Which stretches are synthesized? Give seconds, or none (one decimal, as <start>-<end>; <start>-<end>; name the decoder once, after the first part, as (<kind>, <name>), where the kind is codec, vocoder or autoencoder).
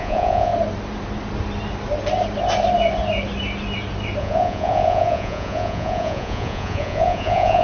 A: 0.0-0.5 (vocoder, Vocos); 4.2-7.6